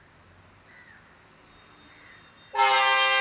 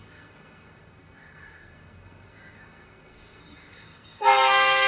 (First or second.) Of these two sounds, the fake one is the second